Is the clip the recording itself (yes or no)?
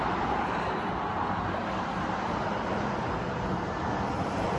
yes